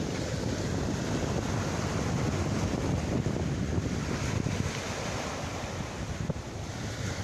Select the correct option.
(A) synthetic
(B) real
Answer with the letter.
B